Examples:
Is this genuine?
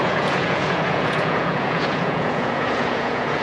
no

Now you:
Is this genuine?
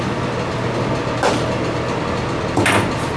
yes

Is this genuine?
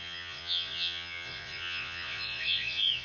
no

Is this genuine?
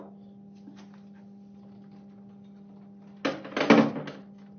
yes